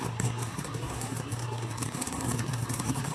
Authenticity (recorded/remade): remade